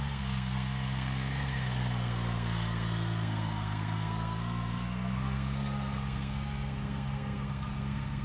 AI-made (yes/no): yes